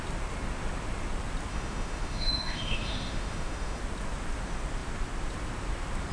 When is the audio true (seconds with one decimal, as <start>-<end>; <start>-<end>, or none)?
0.0-1.5; 3.8-6.1